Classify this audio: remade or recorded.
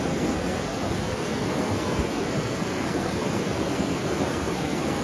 remade